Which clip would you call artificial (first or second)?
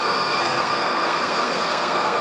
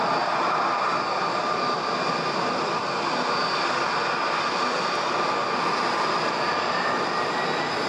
first